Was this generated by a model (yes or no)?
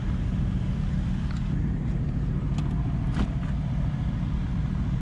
no